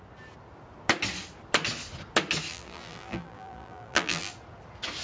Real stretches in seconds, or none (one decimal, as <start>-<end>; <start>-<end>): 0.0-2.5; 4.3-5.0